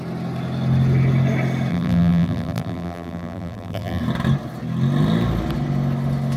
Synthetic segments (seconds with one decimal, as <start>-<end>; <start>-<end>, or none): 1.7-4.0